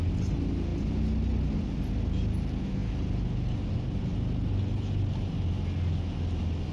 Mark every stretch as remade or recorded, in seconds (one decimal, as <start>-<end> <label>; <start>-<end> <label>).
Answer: 0.0-6.7 recorded